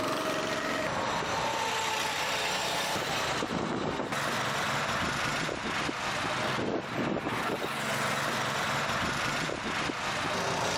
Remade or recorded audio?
recorded